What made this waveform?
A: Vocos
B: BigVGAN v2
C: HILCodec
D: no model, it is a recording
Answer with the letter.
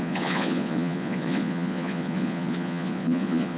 A